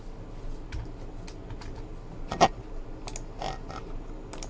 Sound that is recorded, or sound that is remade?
recorded